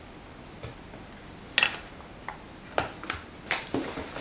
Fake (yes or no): no